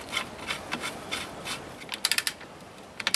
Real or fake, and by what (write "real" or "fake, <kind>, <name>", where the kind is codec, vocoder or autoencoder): real